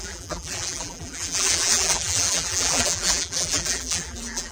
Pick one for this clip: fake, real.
fake